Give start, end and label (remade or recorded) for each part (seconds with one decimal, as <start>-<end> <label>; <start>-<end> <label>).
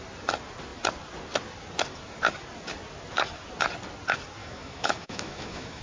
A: 0.0-4.4 recorded; 4.4-5.8 remade